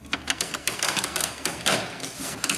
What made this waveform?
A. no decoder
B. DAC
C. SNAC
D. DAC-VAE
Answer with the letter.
C